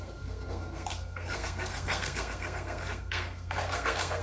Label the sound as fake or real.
fake